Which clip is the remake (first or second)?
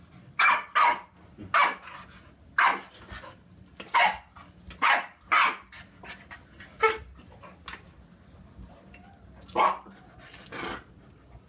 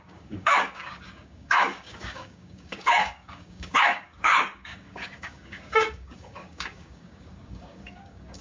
second